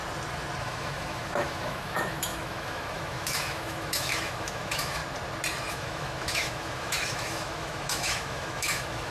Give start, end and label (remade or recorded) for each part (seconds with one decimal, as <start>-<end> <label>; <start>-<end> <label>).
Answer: 0.0-0.6 recorded; 0.6-5.0 remade; 5.0-5.7 recorded; 5.7-9.1 remade